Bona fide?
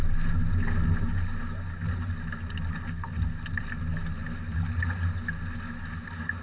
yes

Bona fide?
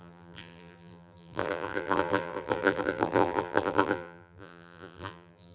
no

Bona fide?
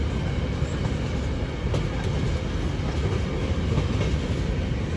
yes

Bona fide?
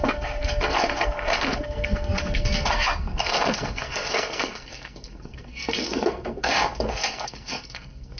no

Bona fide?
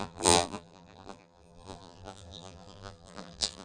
no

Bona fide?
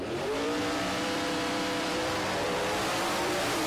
no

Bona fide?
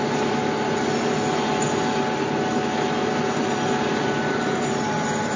yes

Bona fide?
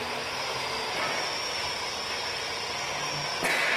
yes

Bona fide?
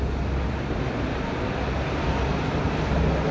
yes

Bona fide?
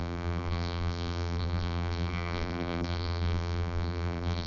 no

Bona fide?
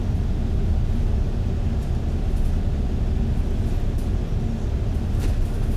yes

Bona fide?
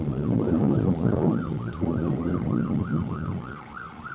no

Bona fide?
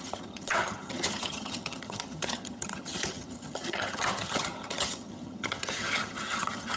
no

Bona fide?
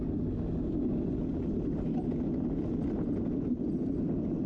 yes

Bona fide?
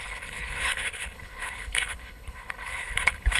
no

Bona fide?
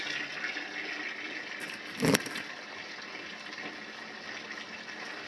yes